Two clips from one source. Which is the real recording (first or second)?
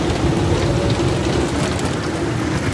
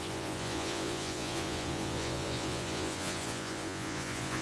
first